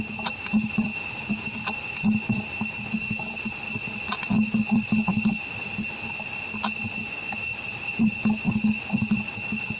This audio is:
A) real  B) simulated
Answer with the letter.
A